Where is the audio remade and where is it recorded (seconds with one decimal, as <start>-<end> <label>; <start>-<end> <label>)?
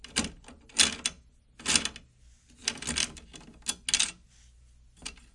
0.0-5.3 recorded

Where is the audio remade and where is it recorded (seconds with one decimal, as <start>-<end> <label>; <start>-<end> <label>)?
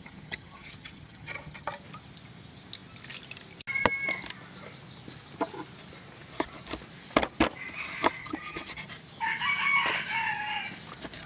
0.0-1.7 remade; 1.7-8.2 recorded; 8.2-8.8 remade; 8.8-11.3 recorded